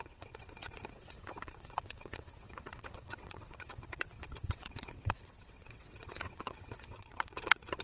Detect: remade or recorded remade